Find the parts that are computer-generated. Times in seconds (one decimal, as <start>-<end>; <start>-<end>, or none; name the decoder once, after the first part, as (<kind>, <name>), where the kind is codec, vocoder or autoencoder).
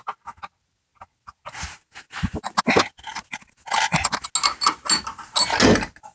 none